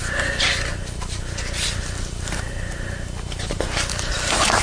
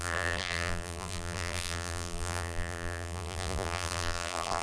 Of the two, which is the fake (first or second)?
second